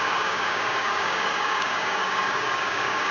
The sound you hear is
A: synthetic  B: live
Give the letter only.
A